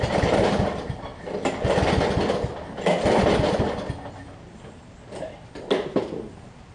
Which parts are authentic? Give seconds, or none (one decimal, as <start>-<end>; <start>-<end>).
1.1-4.1